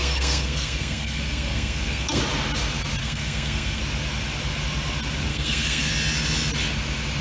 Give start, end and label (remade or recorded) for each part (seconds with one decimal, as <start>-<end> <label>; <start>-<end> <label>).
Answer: 0.0-2.2 remade; 2.2-3.0 recorded; 3.0-3.8 remade; 3.8-5.3 recorded; 5.3-5.9 remade; 5.9-7.2 recorded